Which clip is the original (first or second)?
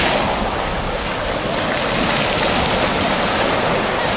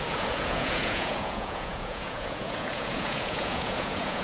first